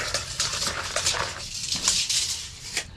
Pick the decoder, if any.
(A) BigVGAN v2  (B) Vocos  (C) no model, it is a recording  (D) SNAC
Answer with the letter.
C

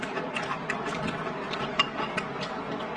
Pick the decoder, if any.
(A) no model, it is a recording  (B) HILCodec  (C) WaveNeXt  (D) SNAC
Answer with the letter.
A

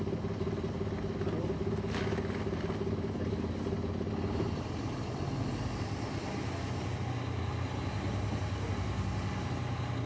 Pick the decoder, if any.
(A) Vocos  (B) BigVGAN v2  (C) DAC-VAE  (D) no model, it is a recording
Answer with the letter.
D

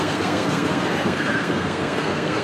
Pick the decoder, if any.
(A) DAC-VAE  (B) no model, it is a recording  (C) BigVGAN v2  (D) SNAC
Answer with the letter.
D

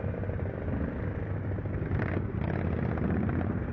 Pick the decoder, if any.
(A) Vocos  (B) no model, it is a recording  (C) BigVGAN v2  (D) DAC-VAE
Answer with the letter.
B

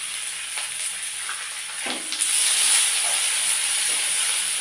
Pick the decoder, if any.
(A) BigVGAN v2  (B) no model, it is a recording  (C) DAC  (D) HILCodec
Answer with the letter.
B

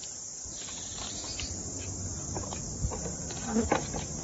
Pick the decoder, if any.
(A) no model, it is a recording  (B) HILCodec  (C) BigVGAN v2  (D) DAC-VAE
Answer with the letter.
A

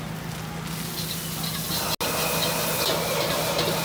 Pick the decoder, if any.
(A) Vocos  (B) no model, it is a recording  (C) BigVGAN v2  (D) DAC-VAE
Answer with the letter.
B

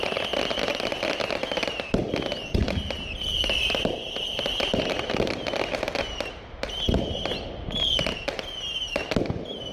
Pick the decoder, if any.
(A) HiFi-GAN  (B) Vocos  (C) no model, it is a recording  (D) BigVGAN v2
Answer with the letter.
C